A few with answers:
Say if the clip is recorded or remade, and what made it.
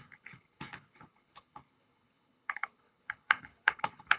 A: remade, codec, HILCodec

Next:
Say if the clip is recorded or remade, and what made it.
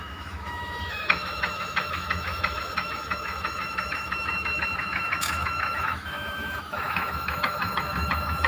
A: remade, autoencoder, DAC-VAE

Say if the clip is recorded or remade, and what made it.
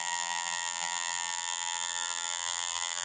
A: remade, vocoder, BigVGAN v2